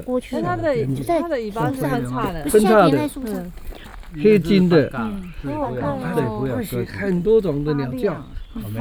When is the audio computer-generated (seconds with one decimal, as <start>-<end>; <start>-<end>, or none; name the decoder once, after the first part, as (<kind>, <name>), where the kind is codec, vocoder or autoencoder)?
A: none